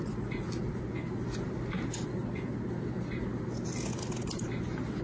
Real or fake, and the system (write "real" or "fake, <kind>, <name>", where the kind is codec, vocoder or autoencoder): real